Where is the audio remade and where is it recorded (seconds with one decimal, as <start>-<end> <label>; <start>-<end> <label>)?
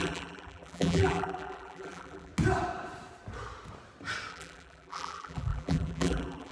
0.0-2.3 remade; 2.3-4.3 recorded; 4.3-6.5 remade